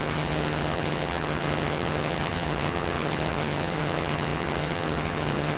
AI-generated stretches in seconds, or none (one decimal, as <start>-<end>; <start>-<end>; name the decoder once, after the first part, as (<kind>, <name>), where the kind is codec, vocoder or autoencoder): 0.0-5.6 (vocoder, HiFi-GAN)